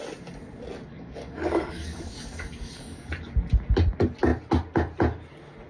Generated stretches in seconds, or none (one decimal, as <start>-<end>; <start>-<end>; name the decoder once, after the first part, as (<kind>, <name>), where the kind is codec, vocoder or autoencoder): 0.9-3.1 (codec, DAC)